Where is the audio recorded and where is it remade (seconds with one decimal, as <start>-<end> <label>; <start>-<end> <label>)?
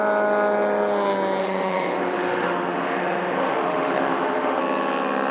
0.0-1.4 recorded; 1.4-4.6 remade; 4.6-5.3 recorded